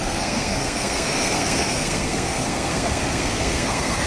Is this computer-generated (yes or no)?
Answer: yes